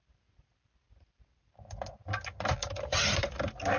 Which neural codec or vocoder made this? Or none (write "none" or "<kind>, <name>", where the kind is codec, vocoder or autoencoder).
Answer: none